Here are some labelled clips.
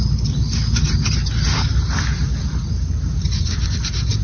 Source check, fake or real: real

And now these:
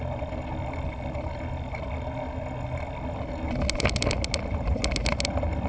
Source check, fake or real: real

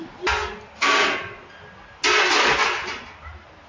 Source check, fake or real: real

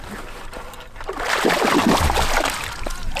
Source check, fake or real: real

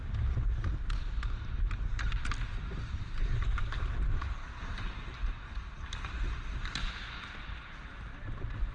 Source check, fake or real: real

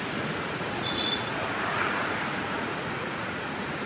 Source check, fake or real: fake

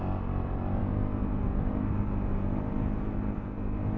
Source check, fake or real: real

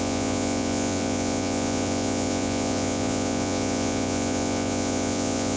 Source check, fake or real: fake